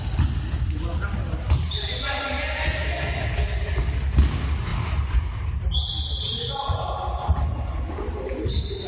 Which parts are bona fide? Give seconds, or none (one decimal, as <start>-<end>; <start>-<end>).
0.0-8.9